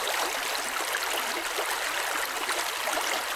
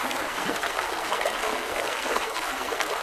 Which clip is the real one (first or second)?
first